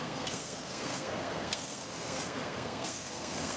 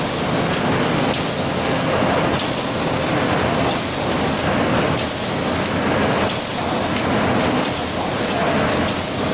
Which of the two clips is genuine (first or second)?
second